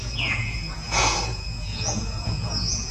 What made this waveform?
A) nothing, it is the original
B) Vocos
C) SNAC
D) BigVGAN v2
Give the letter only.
B